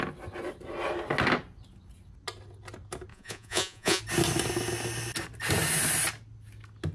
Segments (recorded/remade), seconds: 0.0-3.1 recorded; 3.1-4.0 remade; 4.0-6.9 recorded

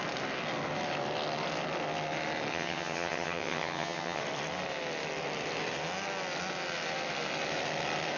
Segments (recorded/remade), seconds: 0.0-2.5 recorded; 2.5-4.2 remade; 4.2-8.2 recorded

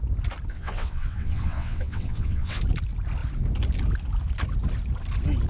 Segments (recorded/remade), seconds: 0.0-0.5 recorded; 0.5-2.6 remade; 2.6-5.5 recorded

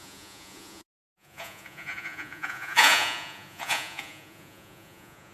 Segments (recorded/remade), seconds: 0.0-5.3 remade

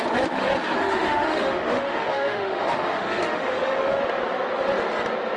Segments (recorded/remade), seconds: 0.0-0.8 recorded; 0.8-4.0 remade; 4.0-5.4 recorded

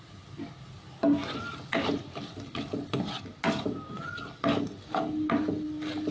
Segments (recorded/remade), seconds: 0.0-6.1 recorded